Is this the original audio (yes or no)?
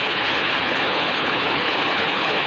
no